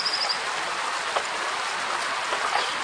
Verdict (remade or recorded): recorded